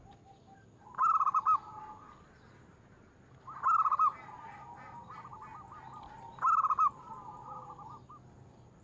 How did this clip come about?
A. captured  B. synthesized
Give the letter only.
A